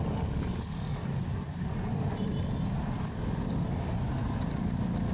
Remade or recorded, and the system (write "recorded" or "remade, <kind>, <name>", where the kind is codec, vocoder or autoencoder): recorded